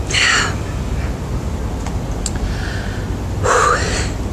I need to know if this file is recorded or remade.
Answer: recorded